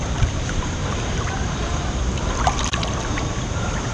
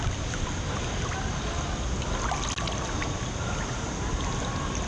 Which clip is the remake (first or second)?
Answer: first